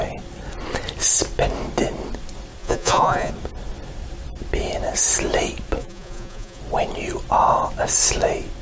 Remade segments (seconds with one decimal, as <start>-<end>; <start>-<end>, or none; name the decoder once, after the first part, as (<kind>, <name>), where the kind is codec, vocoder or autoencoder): 2.6-3.3 (vocoder, Vocos); 5.8-6.6